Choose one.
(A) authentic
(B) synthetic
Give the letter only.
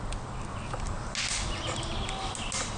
A